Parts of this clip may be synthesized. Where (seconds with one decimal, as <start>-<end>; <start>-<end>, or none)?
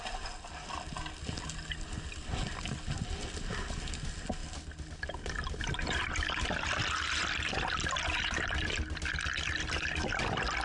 none